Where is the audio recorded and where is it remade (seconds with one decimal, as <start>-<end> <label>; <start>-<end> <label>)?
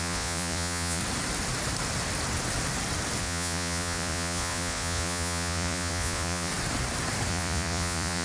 0.0-1.0 remade; 1.0-3.2 recorded; 3.2-6.5 remade; 6.5-7.3 recorded; 7.3-8.2 remade